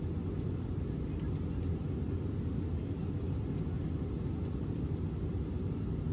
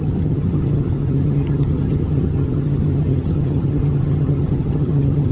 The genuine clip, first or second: first